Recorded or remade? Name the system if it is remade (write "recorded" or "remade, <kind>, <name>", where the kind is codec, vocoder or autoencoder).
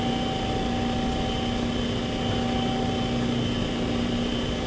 recorded